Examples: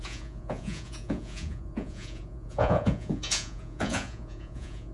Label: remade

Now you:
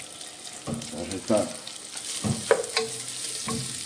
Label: recorded